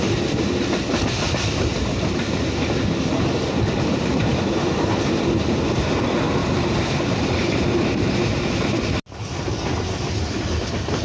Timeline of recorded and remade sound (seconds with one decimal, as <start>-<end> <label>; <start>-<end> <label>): 0.0-6.4 recorded; 6.4-8.5 remade; 8.5-11.0 recorded